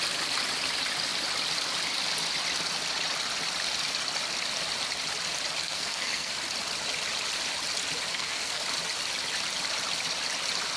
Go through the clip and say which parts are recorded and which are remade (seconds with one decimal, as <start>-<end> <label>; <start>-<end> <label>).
0.0-5.6 recorded; 5.6-6.3 remade; 6.3-8.1 recorded; 8.1-8.6 remade; 8.6-10.8 recorded